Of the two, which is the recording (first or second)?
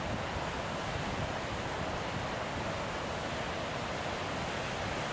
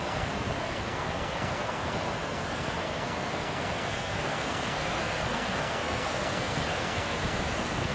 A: first